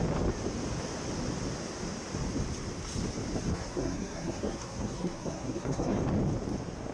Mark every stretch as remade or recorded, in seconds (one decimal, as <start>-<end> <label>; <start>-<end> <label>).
0.0-3.5 recorded; 3.5-6.0 remade; 6.0-6.9 recorded